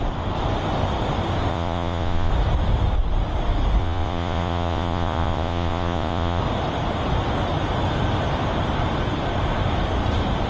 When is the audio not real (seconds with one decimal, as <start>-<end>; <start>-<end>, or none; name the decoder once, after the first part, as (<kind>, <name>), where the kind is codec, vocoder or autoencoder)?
1.5-2.3 (vocoder, Vocos); 3.8-6.4